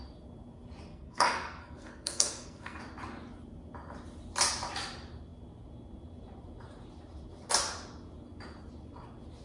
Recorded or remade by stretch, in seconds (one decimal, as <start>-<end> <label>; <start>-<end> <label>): 0.0-0.9 recorded; 0.9-2.8 remade; 2.8-9.4 recorded